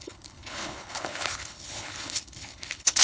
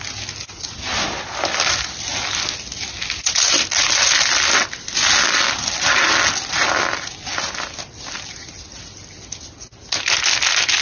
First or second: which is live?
second